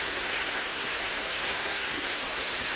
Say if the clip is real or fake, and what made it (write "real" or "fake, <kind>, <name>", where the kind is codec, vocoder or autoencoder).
fake, codec, SNAC